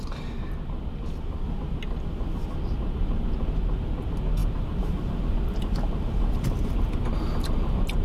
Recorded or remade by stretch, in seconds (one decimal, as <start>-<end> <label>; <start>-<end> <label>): 0.0-8.0 recorded